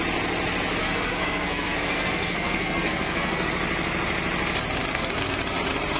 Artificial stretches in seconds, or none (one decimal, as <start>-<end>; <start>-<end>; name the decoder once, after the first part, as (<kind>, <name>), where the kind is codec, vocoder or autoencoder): 0.8-3.5 (codec, SNAC); 4.9-5.4